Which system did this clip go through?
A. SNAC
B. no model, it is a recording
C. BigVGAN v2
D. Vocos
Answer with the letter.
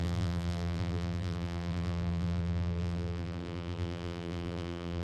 C